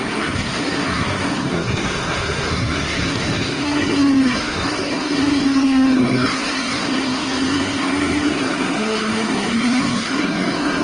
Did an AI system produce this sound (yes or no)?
yes